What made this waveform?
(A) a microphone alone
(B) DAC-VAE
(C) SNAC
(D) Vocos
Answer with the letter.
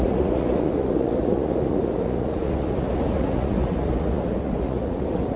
D